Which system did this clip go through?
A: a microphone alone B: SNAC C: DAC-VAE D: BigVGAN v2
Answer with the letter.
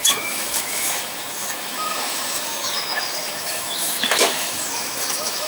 C